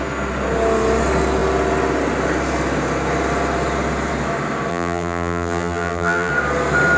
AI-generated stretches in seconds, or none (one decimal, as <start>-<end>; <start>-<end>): 4.7-6.3